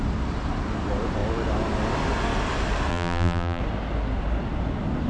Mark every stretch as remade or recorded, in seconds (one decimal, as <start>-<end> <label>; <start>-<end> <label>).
0.0-2.9 recorded; 2.9-3.6 remade; 3.6-5.1 recorded